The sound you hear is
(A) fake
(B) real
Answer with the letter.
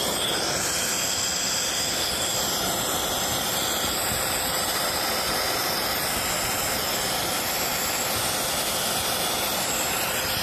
A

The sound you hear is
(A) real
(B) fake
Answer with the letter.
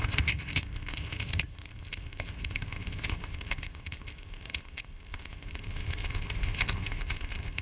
B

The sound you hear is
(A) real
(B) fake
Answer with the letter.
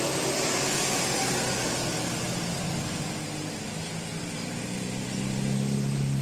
A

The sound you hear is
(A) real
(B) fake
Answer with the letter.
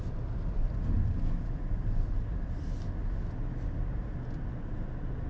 A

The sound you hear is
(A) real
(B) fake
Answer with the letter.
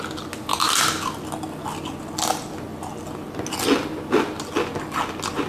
A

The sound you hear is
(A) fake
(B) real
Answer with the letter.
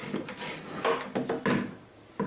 B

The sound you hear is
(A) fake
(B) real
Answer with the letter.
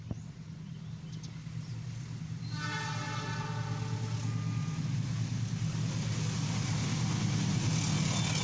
B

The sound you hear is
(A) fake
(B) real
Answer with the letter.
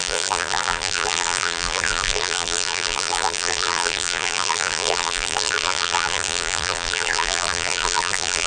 A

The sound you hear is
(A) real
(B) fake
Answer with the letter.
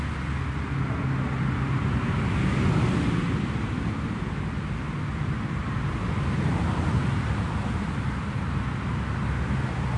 A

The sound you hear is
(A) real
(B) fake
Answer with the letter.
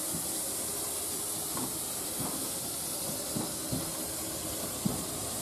A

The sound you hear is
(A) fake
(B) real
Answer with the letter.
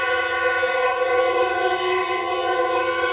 A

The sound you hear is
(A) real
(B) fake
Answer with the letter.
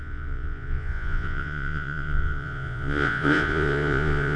B